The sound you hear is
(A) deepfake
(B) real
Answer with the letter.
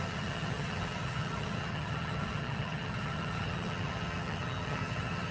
A